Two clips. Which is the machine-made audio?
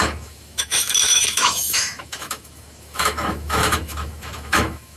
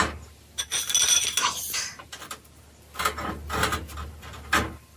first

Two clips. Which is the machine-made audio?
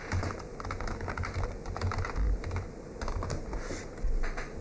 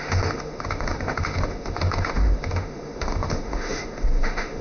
second